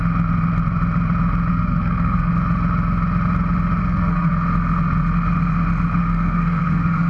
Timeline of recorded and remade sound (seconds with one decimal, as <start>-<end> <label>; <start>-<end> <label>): 0.0-1.5 recorded; 1.5-2.3 remade; 2.3-3.8 recorded; 3.8-4.3 remade; 4.3-6.0 recorded; 6.0-7.1 remade

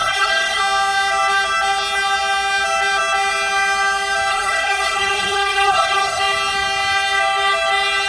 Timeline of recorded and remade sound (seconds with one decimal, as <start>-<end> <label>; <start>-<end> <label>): 0.0-0.6 remade; 0.6-4.3 recorded; 4.3-6.2 remade; 6.2-8.1 recorded

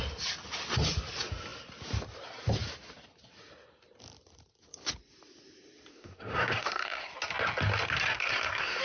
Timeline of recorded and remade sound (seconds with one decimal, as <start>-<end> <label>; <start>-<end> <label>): 0.0-5.9 recorded; 5.9-7.1 remade; 7.1-8.1 recorded; 8.1-8.8 remade

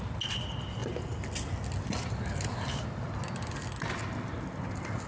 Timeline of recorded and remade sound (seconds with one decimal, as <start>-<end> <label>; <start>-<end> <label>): 0.0-5.1 recorded